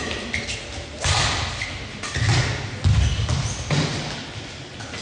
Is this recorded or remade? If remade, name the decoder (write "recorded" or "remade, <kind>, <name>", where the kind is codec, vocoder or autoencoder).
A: recorded